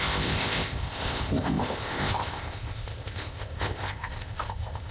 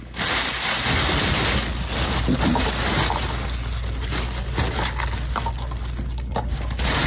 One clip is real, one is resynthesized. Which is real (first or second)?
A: second